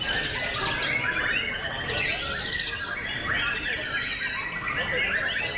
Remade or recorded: recorded